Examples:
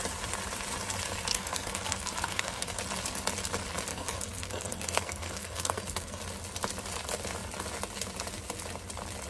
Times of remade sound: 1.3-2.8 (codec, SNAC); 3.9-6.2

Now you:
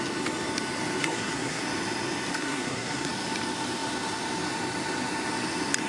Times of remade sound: 1.0-1.6 (codec, SNAC); 2.3-3.1

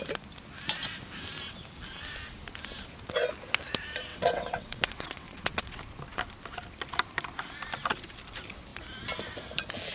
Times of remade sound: 4.1-5.8 (vocoder, WaveNeXt)